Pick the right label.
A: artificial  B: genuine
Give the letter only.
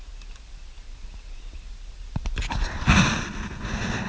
B